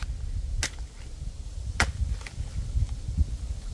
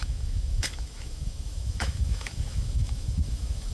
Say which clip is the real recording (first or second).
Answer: first